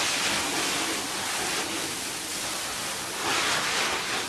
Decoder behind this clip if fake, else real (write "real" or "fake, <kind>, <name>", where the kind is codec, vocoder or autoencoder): real